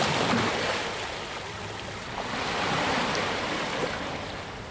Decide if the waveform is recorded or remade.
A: recorded